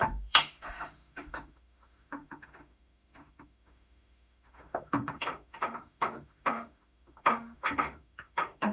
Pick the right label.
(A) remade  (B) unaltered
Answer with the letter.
A